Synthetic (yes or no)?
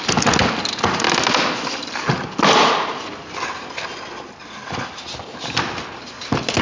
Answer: no